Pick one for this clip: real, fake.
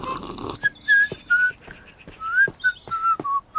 real